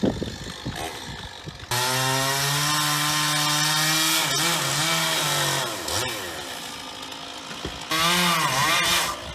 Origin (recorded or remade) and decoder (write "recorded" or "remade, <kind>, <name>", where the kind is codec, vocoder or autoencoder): recorded